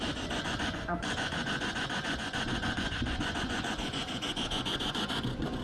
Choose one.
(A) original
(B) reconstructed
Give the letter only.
B